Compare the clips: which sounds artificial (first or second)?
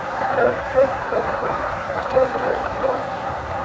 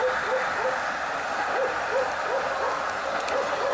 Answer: first